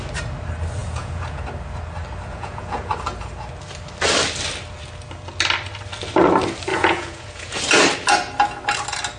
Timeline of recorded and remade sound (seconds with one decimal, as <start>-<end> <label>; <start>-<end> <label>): 0.0-0.8 recorded; 0.8-1.4 remade; 1.4-2.3 recorded; 2.3-2.9 remade; 2.9-6.7 recorded; 6.7-7.6 remade; 7.6-9.2 recorded